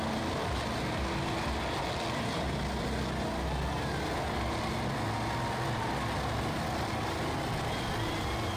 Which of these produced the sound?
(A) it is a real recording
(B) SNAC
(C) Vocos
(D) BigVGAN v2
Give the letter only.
A